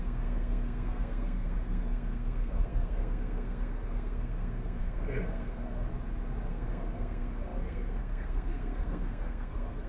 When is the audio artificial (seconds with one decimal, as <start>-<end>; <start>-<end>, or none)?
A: 0.0-5.9; 6.5-9.9